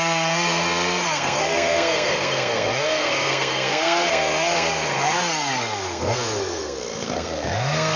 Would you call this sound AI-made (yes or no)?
yes